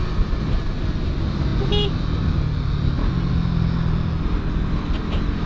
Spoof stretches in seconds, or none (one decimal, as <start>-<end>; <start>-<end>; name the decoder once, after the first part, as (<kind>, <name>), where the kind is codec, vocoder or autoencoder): none